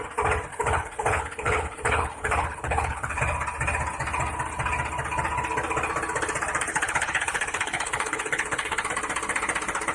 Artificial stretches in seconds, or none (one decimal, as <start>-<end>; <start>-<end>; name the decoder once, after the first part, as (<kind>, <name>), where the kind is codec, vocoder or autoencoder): 0.5-3.2 (codec, HILCodec); 6.7-8.9